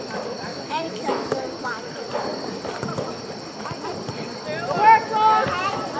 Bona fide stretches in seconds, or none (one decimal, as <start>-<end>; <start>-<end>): 0.0-0.5; 1.4-6.0